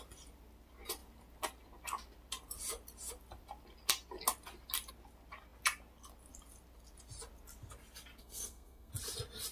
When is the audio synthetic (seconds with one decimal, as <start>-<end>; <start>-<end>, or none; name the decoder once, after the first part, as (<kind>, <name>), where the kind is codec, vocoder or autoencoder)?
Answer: 8.2-8.9 (codec, SNAC)